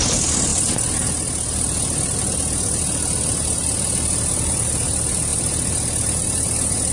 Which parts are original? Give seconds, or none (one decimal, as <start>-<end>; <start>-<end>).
0.0-6.9